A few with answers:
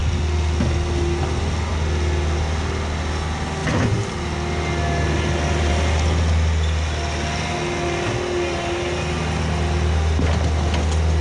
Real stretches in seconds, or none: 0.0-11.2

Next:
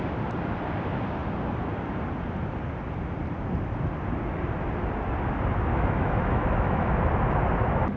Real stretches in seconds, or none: 0.0-5.7; 6.9-8.0

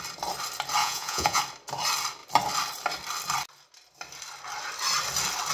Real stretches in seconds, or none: 0.0-0.8; 1.4-5.5

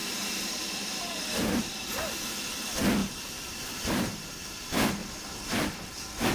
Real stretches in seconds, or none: 2.4-3.0; 4.3-5.0; 5.6-6.3

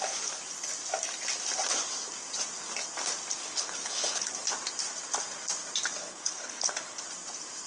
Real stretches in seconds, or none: 0.0-3.4; 4.5-6.0; 7.0-7.7